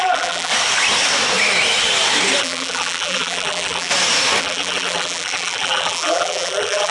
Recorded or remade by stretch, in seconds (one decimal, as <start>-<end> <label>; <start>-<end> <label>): 0.0-0.5 remade; 0.5-2.4 recorded; 2.4-3.9 remade; 3.9-4.4 recorded; 4.4-6.9 remade

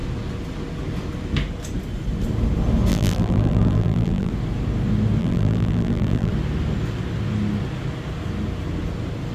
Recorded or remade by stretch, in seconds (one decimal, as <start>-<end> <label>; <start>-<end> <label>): 0.0-2.9 recorded; 2.9-4.3 remade; 4.3-5.2 recorded; 5.2-6.3 remade; 6.3-9.3 recorded

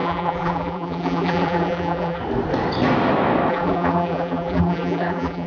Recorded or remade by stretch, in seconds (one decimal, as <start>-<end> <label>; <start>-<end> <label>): 0.0-2.2 remade; 2.2-3.5 recorded; 3.5-5.5 remade

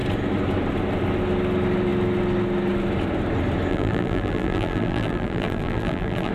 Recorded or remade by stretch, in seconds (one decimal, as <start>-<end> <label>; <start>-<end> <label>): 0.0-3.7 recorded; 3.7-6.3 remade

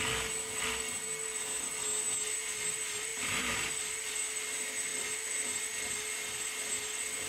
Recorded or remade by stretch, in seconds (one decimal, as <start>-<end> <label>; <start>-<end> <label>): 0.0-3.1 recorded; 3.1-3.7 remade; 3.7-7.3 recorded

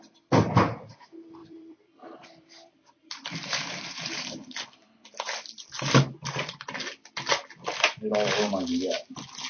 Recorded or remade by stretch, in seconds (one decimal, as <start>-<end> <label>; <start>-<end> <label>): 0.0-1.4 recorded; 1.4-5.8 remade; 5.8-9.5 recorded

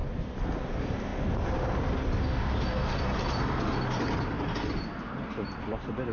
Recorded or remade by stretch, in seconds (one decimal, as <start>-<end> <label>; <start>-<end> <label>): 0.0-0.7 remade; 0.7-6.1 recorded